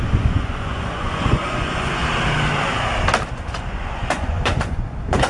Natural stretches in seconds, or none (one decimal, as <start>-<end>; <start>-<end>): 2.0-3.3